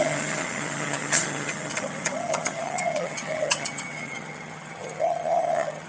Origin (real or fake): fake